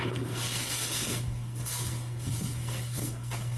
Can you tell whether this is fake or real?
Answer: fake